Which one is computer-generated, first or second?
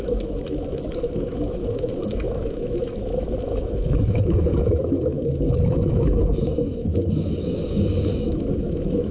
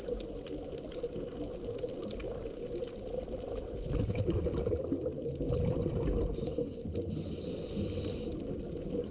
first